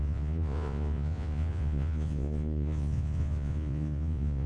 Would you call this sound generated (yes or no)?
yes